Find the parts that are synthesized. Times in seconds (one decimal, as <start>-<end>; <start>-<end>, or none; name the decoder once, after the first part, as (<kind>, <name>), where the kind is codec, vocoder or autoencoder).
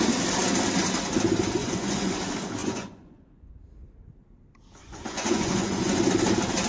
1.6-2.1 (vocoder, Vocos); 2.6-3.5; 4.8-6.0